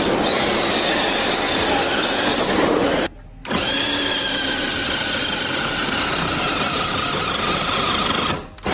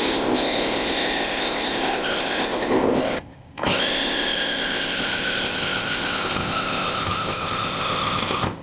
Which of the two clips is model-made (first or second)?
second